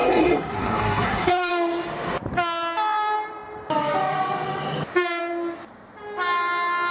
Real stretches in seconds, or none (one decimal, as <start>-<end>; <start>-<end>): 1.5-6.9